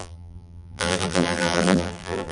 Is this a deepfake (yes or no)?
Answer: yes